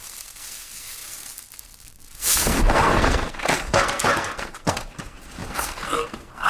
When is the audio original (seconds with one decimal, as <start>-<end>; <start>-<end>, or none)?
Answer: none